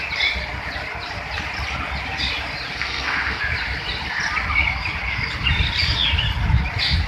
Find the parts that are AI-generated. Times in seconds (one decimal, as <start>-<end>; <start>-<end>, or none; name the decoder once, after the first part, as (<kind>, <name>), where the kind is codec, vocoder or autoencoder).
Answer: 2.7-3.4 (codec, SNAC)